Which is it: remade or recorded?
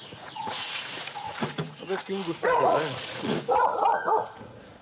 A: remade